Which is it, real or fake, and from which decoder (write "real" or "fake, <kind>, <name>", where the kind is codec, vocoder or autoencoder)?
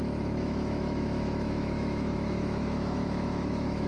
fake, autoencoder, DAC-VAE